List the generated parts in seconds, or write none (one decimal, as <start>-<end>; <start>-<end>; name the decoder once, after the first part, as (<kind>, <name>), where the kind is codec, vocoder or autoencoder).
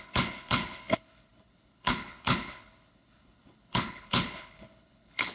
0.0-5.3 (codec, HILCodec)